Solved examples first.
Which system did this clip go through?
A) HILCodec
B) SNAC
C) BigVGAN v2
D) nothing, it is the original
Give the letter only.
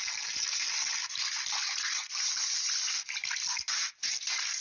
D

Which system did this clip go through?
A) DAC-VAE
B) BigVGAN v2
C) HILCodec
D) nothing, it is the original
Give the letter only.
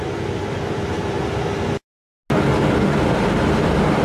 D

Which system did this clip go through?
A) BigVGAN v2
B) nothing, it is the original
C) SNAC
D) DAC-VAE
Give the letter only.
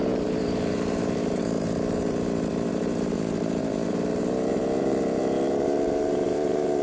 A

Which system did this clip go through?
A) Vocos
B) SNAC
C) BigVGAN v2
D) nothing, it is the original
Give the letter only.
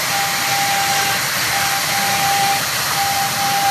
D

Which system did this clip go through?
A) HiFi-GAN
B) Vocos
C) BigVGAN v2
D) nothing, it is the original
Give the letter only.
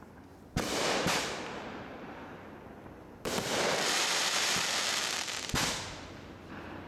C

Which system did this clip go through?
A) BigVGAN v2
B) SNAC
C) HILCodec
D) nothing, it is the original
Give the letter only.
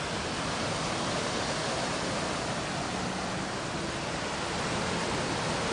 D